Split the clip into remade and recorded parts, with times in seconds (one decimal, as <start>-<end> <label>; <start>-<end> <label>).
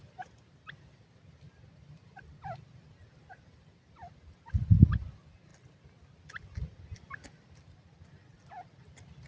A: 0.0-9.3 recorded